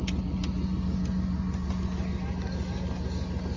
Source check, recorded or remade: recorded